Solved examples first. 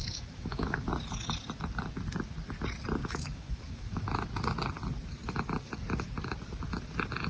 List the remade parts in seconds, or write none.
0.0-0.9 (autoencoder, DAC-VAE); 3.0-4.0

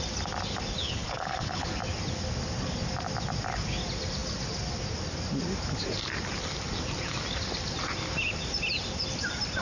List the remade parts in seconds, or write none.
0.8-1.7 (codec, HILCodec)

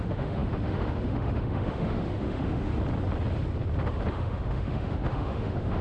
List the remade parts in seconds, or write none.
0.0-2.7 (autoencoder, DAC-VAE); 4.1-5.8

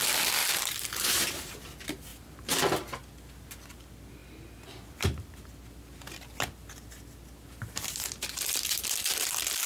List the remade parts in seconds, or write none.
0.4-1.5 (vocoder, BigVGAN v2); 2.1-2.8

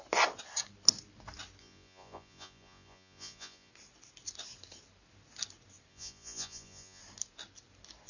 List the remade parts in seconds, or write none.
1.6-3.7 (vocoder, Vocos); 5.9-7.0

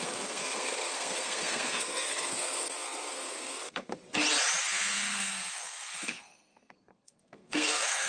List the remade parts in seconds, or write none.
0.0-4.0 (codec, SNAC); 4.6-8.1

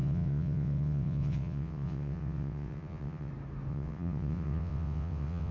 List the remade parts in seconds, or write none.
0.0-3.3 (vocoder, WaveNeXt); 3.7-5.5